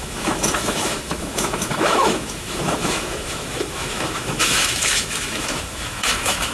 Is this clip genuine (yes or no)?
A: no